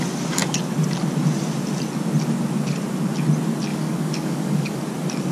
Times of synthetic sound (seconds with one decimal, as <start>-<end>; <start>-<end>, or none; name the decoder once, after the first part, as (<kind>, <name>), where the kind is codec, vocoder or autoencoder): 3.7-4.8 (codec, DAC)